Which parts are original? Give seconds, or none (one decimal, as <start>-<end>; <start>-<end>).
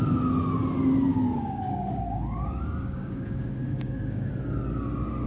0.0-1.1; 4.3-5.3